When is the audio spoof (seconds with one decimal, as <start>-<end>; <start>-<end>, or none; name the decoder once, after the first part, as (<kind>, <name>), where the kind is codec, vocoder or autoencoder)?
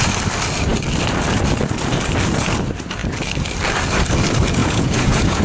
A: 4.6-5.4 (vocoder, Vocos)